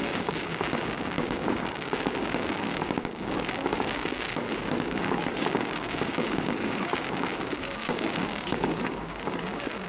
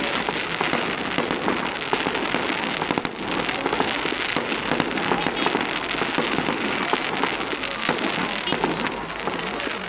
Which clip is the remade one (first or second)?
first